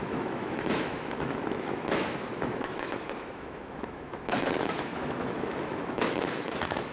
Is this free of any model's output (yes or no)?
no